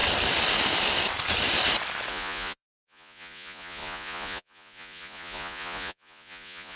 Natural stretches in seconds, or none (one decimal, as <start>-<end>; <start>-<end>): 0.0-2.1